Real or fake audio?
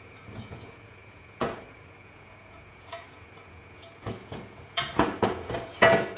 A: fake